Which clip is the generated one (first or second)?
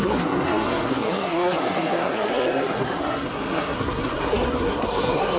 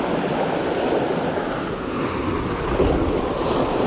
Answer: first